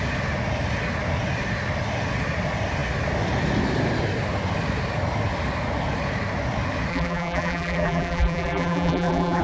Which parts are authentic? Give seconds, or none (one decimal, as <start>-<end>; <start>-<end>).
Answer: 0.0-6.9